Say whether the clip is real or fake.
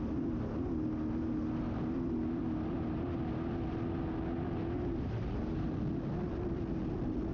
real